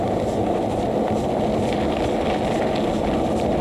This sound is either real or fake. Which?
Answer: real